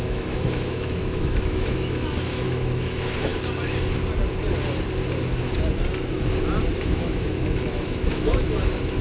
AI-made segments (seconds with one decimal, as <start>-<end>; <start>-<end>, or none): 0.0-3.3; 6.8-9.0